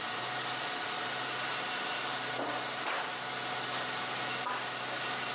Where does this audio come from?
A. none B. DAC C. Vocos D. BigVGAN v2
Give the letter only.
A